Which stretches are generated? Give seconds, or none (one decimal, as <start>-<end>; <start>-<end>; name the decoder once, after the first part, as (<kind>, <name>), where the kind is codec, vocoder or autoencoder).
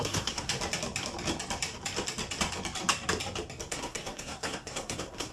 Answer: 0.0-0.5 (codec, SNAC); 3.7-5.3